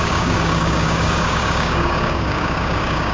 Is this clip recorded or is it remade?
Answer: remade